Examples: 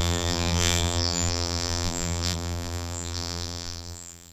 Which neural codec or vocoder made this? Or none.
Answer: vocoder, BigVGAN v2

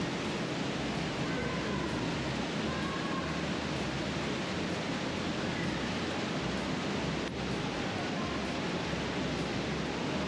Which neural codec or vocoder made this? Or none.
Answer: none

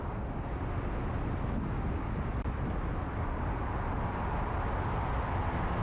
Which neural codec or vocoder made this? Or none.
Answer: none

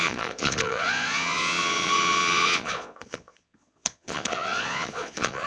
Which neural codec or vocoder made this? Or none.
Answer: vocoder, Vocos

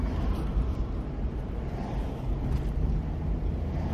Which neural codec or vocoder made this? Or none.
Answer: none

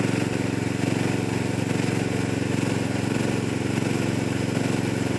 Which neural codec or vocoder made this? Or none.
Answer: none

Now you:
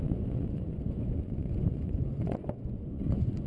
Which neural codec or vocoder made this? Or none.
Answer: vocoder, Vocos